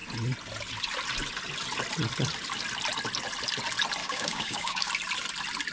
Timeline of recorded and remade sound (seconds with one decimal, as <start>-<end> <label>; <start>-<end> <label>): 0.0-4.0 recorded; 4.0-4.9 remade; 4.9-5.7 recorded